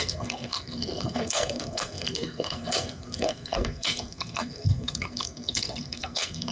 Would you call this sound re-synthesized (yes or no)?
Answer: yes